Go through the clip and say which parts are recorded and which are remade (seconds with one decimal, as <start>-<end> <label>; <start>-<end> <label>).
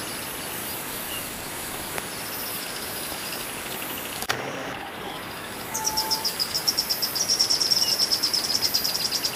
0.0-0.6 recorded; 0.6-2.1 remade; 2.1-2.5 recorded; 2.5-6.7 remade; 6.7-9.4 recorded